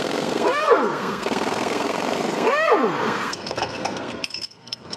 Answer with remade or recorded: remade